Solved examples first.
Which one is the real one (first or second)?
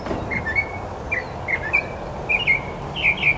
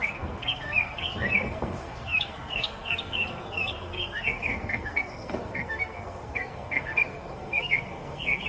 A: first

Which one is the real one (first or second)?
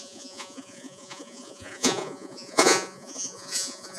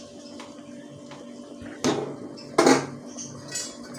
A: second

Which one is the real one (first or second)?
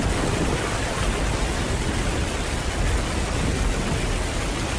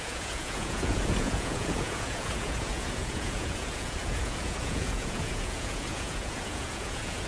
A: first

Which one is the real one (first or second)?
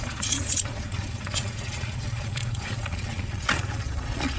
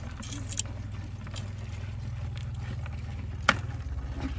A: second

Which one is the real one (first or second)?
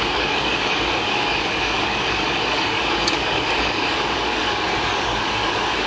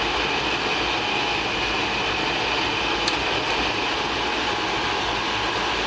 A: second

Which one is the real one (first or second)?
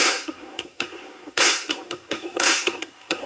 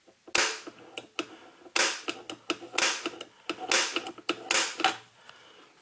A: second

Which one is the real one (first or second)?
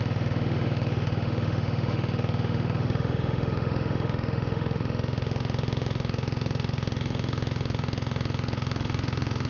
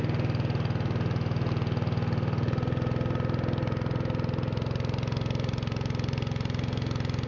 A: second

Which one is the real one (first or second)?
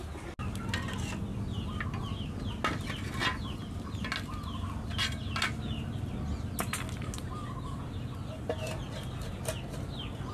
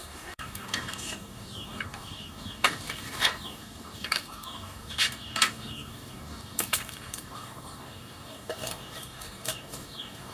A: first